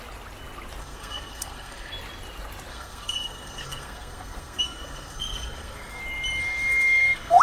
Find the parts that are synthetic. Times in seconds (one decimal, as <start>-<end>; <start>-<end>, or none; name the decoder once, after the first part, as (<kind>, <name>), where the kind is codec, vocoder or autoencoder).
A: 0.8-1.9 (codec, SNAC); 2.7-6.0; 6.4-7.4